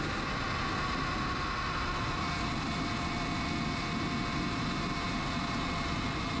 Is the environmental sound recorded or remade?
recorded